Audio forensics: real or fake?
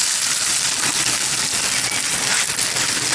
real